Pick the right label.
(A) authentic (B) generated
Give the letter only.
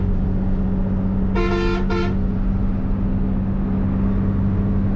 A